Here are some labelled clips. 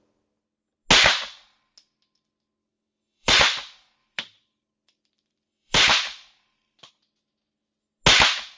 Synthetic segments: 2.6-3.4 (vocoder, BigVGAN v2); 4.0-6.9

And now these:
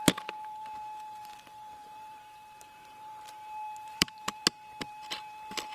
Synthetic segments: 1.3-4.4 (vocoder, BigVGAN v2)